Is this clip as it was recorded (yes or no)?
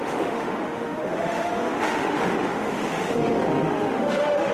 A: no